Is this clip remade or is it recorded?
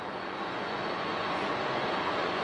remade